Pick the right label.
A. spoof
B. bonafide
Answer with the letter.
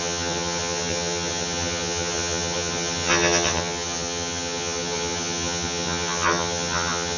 A